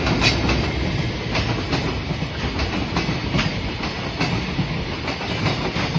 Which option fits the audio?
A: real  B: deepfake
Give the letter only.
A